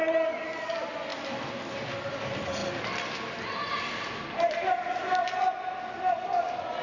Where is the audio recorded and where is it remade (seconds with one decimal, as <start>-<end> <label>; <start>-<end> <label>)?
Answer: 0.0-6.8 recorded